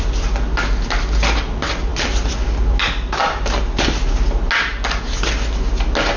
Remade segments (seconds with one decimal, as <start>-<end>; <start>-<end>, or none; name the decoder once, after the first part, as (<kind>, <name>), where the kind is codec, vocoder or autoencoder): none